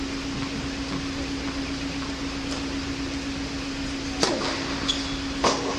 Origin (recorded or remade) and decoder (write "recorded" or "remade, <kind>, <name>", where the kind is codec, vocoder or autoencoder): recorded